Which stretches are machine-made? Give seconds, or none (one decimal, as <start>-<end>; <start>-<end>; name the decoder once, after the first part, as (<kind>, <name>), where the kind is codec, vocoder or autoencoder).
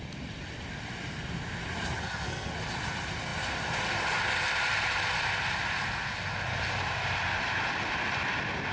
2.0-2.5 (codec, SNAC)